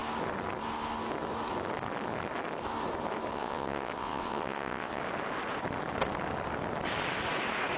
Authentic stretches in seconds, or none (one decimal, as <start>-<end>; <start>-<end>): 0.0-3.3; 5.0-7.8

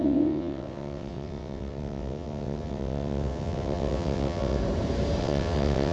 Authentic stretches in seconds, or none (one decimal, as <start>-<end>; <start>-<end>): 4.6-5.2

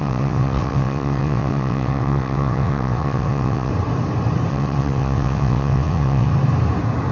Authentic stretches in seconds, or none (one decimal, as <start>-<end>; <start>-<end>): 3.7-4.5; 6.3-7.1

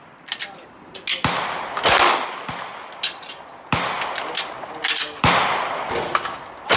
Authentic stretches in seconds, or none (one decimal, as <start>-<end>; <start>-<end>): 0.0-6.8

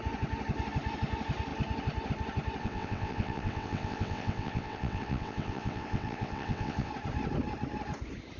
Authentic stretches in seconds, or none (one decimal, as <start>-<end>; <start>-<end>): 0.0-2.6; 6.9-8.4

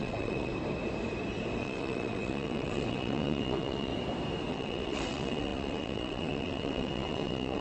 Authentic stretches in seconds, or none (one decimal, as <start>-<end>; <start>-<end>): 0.5-1.6; 3.9-4.5

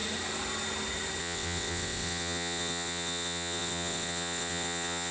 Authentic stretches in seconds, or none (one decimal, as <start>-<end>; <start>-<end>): 0.0-1.2